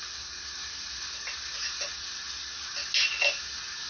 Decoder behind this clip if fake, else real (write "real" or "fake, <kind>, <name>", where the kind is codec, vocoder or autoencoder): real